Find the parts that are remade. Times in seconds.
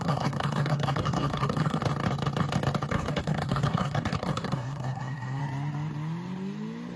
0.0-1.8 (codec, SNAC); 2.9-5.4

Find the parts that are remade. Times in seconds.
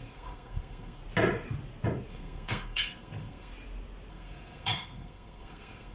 0.0-1.0 (codec, SNAC); 2.1-3.5; 4.1-5.9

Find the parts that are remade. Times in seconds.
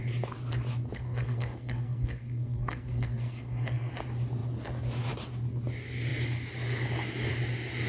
0.9-3.9 (codec, SNAC)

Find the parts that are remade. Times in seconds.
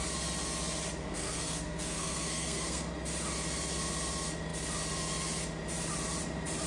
1.0-2.9 (codec, SNAC)